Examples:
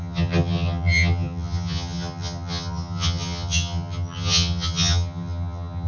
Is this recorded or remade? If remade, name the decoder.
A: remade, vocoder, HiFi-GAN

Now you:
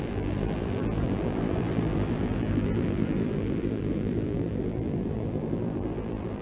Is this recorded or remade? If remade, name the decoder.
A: remade, vocoder, BigVGAN v2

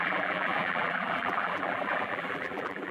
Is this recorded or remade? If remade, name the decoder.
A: remade, vocoder, BigVGAN v2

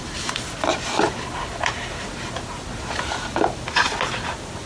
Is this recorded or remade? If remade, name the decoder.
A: recorded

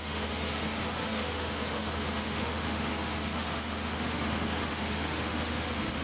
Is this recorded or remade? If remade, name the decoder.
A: remade, autoencoder, DAC-VAE